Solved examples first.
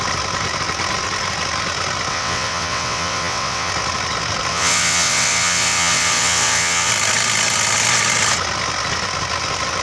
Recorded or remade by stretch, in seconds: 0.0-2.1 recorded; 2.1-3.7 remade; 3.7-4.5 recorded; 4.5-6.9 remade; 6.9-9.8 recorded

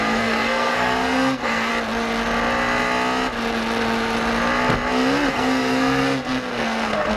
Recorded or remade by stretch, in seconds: 0.0-1.7 remade; 1.7-5.3 recorded; 5.3-7.2 remade

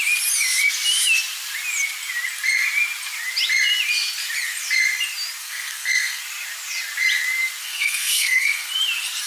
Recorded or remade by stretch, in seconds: 0.0-5.4 recorded; 5.4-6.2 remade; 6.2-7.6 recorded; 7.6-8.7 remade; 8.7-9.3 recorded

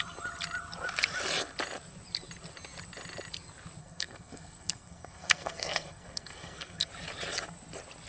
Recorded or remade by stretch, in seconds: 0.0-3.8 recorded; 3.8-6.9 remade; 6.9-8.1 recorded

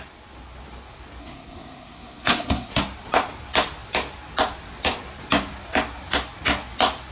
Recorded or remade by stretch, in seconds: 0.0-1.2 recorded; 1.2-2.7 remade; 2.7-7.1 recorded

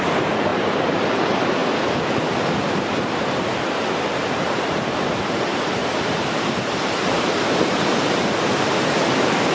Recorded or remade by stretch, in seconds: 0.0-1.6 remade; 1.6-3.2 recorded; 3.2-9.5 remade